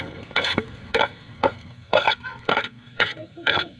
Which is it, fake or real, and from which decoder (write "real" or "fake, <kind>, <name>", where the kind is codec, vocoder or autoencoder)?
fake, codec, SNAC